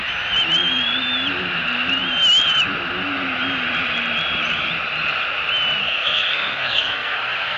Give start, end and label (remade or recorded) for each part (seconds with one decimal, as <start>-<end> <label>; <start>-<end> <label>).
0.0-5.8 recorded; 5.8-7.6 remade